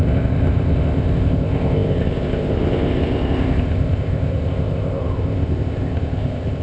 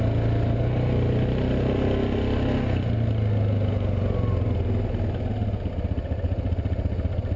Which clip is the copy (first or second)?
first